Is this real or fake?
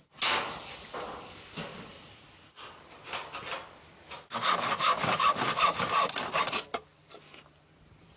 real